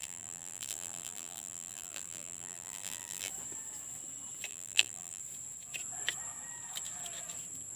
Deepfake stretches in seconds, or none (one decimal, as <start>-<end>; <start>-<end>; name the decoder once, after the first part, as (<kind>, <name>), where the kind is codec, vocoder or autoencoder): 0.0-3.3 (vocoder, BigVGAN v2); 4.5-5.2